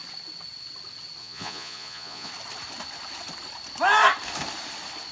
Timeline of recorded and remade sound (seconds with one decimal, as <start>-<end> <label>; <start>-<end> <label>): 0.0-1.2 recorded; 1.2-2.3 remade; 2.3-5.1 recorded